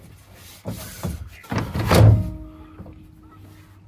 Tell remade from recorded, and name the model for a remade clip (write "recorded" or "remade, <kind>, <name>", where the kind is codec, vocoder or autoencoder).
recorded